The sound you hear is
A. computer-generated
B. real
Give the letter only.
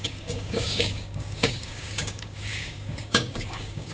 A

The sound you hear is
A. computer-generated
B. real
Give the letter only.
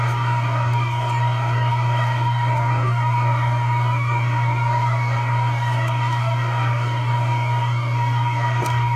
A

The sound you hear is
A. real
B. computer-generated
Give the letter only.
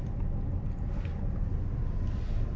A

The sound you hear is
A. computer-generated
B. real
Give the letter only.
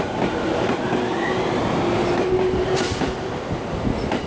B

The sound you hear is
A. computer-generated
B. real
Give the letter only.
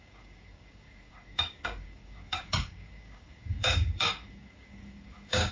A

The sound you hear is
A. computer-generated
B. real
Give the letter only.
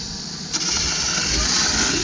B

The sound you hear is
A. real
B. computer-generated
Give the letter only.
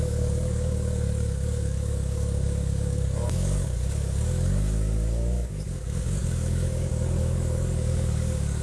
B